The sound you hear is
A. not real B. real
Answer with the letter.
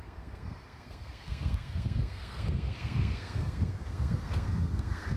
A